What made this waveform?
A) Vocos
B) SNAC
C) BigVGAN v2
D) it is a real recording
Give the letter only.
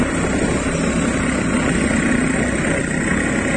D